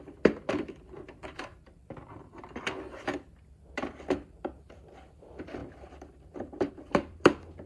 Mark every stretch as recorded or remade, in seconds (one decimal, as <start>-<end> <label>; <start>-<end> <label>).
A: 0.0-7.7 recorded